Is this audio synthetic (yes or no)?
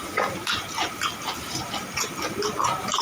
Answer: yes